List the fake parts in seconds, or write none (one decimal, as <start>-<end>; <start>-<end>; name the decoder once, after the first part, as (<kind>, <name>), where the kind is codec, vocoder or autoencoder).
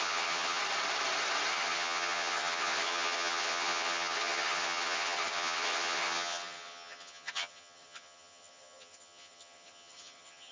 0.0-0.6 (vocoder, HiFi-GAN); 1.5-10.5